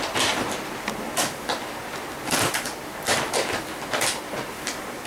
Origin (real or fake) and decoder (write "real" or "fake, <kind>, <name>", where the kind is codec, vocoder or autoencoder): real